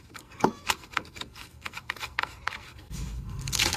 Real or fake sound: fake